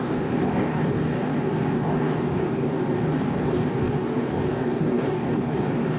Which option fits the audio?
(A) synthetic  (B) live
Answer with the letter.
A